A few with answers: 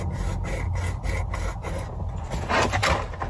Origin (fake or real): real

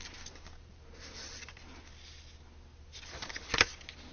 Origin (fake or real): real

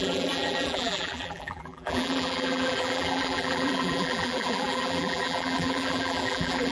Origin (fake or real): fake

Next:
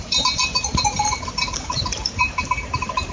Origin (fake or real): fake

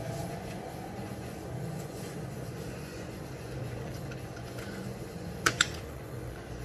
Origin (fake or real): fake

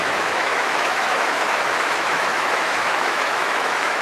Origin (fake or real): fake